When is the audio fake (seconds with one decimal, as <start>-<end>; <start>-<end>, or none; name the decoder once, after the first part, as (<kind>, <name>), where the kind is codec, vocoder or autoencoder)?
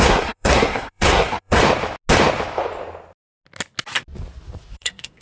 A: 0.0-1.6 (codec, SNAC); 4.7-5.2